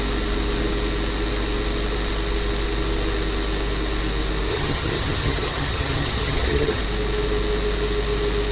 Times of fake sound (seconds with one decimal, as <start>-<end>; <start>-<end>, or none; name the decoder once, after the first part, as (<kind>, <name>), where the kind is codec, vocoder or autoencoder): 4.5-6.8 (vocoder, HiFi-GAN)